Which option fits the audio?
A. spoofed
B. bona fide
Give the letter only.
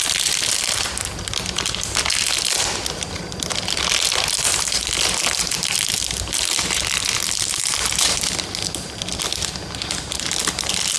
B